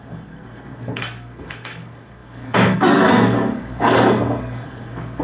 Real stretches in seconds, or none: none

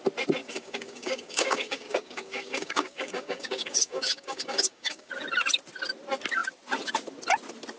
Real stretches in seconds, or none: 0.0-0.4; 5.1-7.8

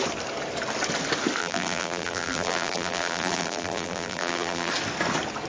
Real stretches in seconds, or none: 0.0-1.4; 4.7-5.5